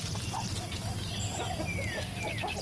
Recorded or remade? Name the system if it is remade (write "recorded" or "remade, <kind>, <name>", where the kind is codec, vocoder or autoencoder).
recorded